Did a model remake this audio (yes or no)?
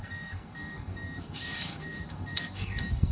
yes